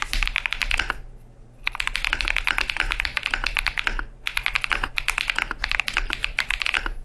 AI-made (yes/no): no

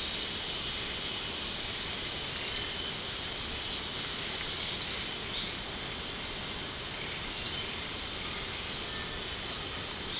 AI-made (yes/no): no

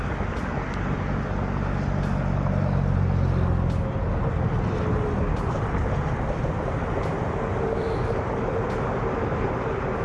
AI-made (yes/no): no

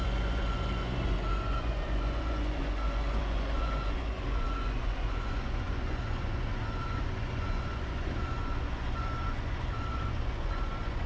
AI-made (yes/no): yes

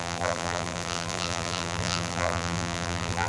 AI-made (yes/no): yes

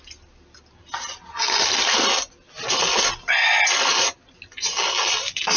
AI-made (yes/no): no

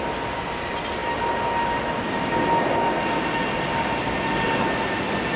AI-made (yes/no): no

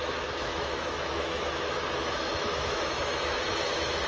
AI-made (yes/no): yes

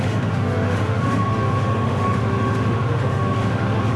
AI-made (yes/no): yes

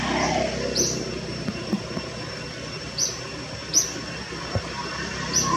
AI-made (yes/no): no